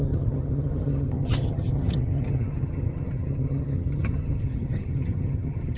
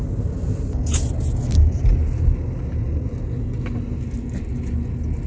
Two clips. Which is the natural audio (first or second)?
second